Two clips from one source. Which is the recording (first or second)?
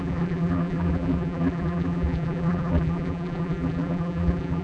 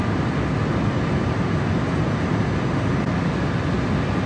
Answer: second